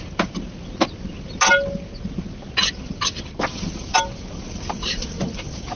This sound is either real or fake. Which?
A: real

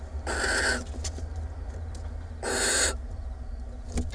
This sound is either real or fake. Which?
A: real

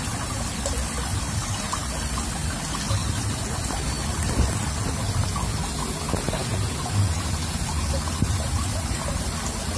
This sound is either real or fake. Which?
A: real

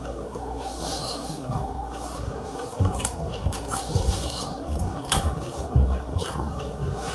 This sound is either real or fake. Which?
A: fake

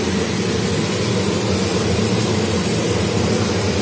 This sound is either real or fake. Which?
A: real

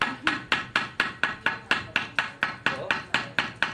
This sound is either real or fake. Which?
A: real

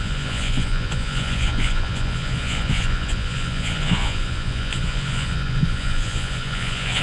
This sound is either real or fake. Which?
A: fake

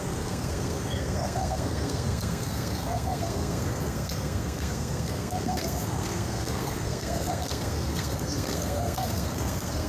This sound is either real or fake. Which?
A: fake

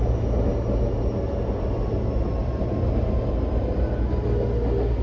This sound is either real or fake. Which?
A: real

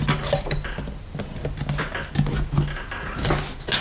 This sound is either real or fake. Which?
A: real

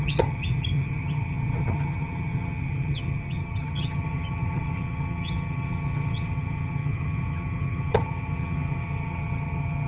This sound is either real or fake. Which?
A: fake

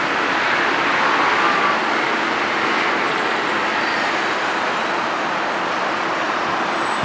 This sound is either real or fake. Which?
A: real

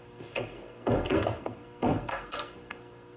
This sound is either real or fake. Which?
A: fake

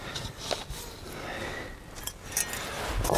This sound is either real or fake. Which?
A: real